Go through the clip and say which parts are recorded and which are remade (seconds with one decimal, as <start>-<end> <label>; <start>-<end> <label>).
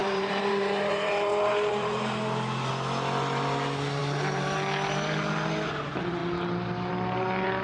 0.0-2.7 remade; 2.7-4.0 recorded; 4.0-5.5 remade; 5.5-7.6 recorded